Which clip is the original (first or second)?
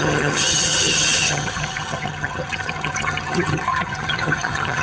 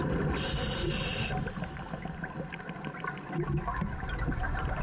second